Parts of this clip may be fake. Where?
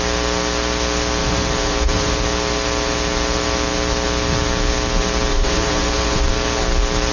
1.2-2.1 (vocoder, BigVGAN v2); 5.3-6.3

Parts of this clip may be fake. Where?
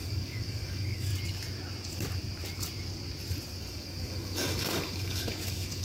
0.0-1.1 (codec, DAC); 3.6-5.8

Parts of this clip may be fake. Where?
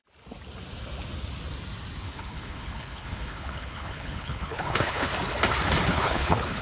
2.0-5.1 (codec, HILCodec); 5.9-6.6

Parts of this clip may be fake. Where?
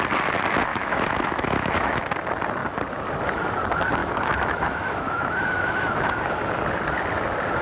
0.7-2.0 (autoencoder, DAC-VAE); 4.0-6.2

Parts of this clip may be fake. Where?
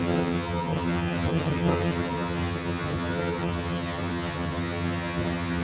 0.0-5.6 (vocoder, HiFi-GAN)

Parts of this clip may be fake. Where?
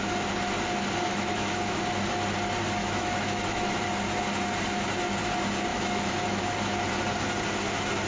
1.1-1.8 (autoencoder, DAC-VAE); 2.8-3.8; 5.7-6.5